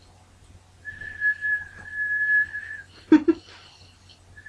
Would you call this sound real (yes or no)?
yes